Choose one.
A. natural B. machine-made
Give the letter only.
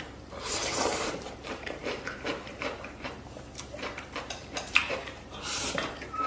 B